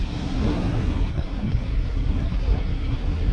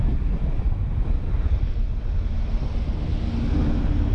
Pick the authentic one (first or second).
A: second